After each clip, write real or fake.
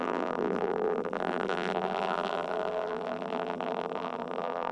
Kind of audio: fake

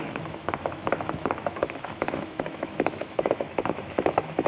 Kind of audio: fake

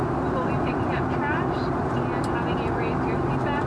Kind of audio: real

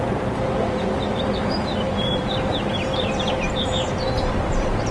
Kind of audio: fake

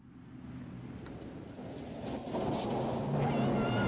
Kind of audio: real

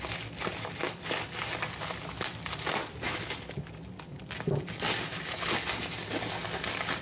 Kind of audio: real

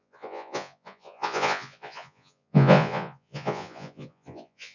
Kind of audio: fake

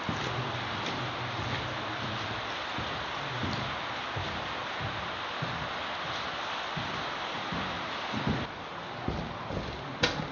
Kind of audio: real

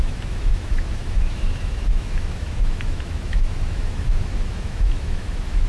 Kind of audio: fake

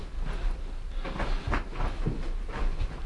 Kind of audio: real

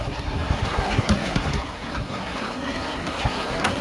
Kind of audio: fake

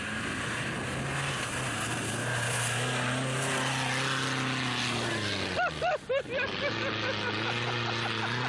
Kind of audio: real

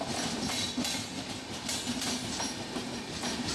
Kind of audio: real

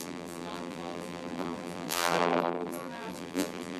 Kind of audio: fake